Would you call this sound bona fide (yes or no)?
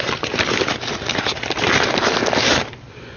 yes